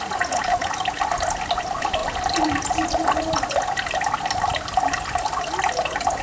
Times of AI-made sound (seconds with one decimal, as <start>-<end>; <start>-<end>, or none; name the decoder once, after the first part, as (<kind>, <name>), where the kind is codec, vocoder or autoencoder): none